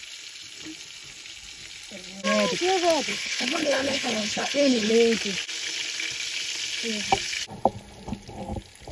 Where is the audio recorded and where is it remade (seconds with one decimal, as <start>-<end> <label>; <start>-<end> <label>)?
0.0-3.1 recorded; 3.1-4.9 remade; 4.9-8.9 recorded